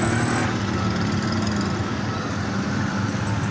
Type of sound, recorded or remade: recorded